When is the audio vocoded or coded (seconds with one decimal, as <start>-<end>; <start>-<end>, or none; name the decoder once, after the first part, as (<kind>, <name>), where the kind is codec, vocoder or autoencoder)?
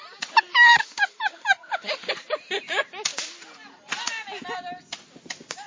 0.5-2.1 (autoencoder, DAC-VAE)